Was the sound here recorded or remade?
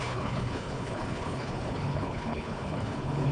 remade